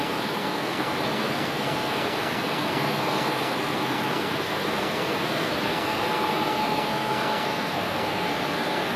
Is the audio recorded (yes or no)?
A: no